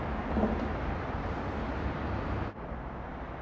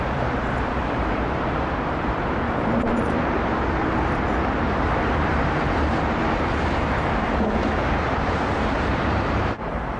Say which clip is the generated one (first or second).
second